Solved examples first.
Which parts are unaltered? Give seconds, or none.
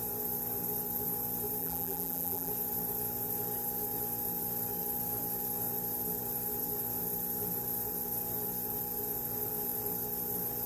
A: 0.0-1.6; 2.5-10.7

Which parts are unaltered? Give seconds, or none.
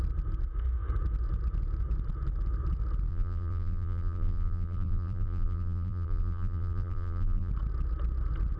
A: 0.0-3.1; 7.5-8.6